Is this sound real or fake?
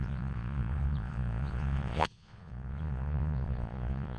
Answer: fake